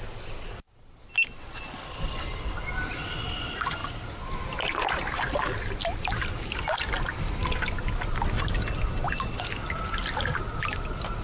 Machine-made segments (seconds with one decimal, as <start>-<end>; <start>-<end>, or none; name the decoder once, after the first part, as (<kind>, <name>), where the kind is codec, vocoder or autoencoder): 3.8-5.3 (vocoder, BigVGAN v2)